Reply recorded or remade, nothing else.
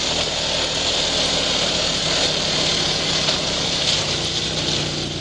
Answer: recorded